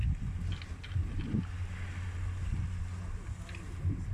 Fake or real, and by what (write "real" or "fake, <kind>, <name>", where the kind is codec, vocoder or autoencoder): real